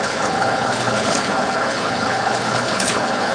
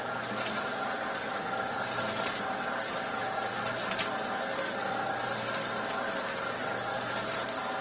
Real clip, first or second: second